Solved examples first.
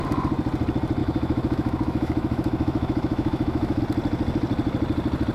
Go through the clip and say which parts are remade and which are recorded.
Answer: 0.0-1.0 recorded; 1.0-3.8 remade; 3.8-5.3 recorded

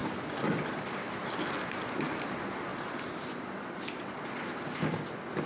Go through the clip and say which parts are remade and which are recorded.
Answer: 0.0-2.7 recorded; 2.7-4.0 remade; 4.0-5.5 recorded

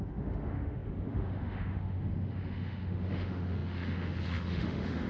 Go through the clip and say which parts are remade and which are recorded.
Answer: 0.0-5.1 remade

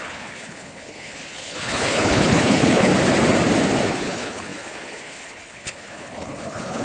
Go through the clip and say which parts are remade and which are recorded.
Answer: 0.0-2.9 remade; 2.9-3.9 recorded; 3.9-6.8 remade